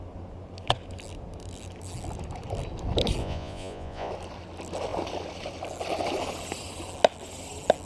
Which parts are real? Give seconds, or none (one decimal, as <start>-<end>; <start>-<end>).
0.0-3.2; 4.1-7.9